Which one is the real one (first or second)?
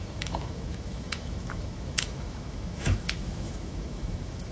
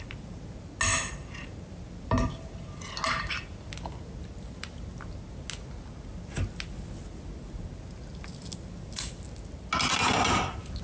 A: second